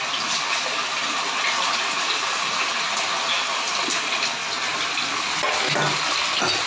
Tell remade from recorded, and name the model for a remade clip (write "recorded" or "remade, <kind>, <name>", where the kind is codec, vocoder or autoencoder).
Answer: recorded